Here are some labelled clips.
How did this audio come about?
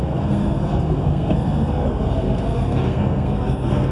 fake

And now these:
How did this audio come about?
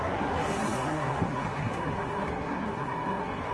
fake